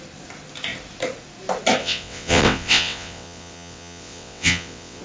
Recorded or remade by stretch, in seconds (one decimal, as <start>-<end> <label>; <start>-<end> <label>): 0.0-1.8 recorded; 1.8-5.0 remade